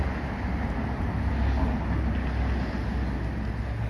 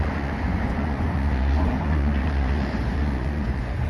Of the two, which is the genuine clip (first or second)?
first